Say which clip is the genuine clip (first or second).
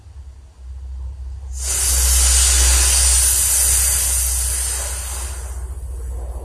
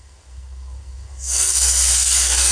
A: first